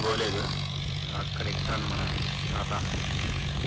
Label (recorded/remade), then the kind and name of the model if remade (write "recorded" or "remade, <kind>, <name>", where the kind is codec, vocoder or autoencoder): remade, vocoder, Vocos